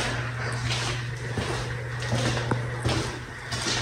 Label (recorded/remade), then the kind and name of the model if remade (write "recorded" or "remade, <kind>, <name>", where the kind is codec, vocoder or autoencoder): recorded